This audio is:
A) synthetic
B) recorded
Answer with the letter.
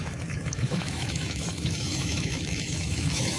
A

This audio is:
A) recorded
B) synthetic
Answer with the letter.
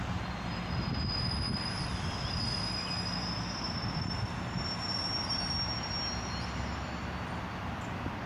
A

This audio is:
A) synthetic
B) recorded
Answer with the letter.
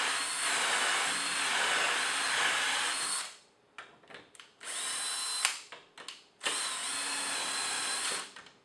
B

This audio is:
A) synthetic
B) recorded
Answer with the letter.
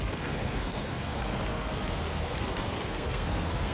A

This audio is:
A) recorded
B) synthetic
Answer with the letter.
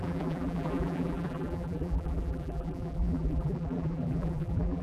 B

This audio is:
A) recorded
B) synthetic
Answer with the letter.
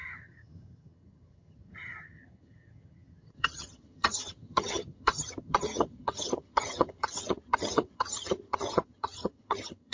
B